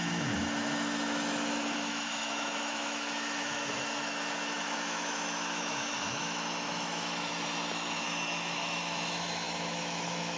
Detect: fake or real fake